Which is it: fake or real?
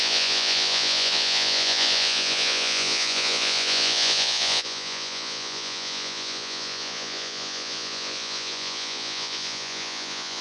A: fake